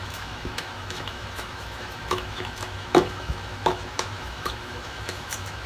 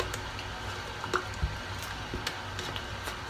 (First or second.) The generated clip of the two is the first